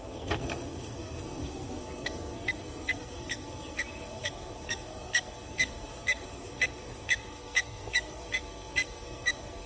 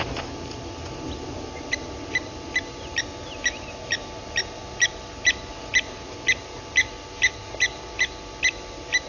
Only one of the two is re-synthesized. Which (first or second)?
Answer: first